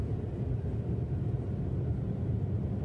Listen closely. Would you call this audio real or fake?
real